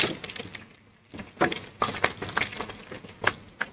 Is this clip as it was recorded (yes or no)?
yes